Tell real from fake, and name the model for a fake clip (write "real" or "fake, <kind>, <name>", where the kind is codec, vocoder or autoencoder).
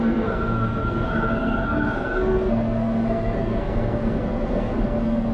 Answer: fake, codec, SNAC